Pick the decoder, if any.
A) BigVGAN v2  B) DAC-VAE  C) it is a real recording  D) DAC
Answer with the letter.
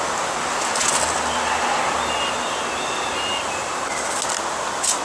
C